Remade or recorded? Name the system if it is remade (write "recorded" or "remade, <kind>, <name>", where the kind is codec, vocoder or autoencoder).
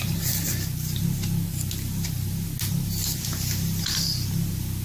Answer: recorded